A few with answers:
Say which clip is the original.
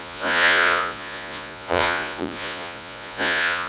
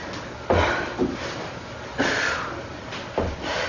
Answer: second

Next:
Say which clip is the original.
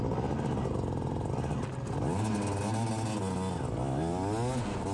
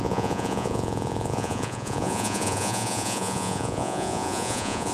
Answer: first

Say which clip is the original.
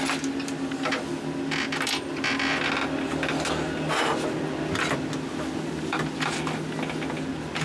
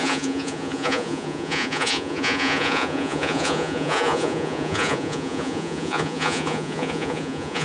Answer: first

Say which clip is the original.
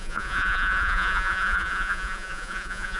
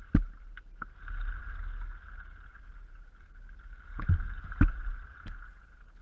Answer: second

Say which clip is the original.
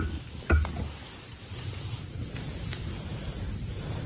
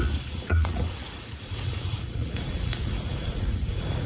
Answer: first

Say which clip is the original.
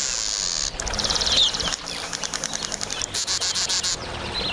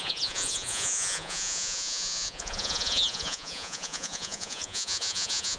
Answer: first